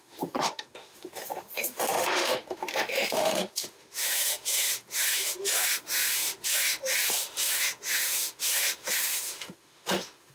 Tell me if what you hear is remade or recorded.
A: remade